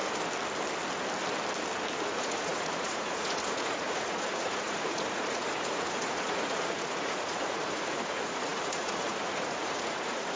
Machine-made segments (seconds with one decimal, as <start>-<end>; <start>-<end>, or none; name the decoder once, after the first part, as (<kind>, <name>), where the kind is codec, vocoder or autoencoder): 2.0-10.4 (vocoder, Vocos)